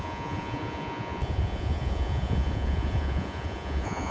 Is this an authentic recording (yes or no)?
no